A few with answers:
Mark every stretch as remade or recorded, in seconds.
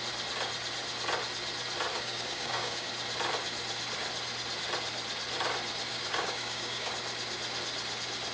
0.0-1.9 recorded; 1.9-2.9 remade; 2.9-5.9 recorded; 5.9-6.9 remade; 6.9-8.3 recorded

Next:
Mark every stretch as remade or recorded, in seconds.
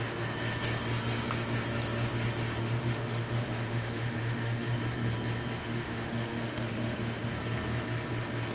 0.0-2.6 recorded; 2.6-4.8 remade; 4.8-5.6 recorded; 5.6-7.3 remade; 7.3-8.5 recorded